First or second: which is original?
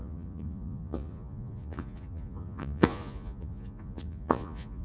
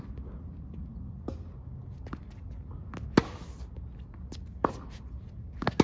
second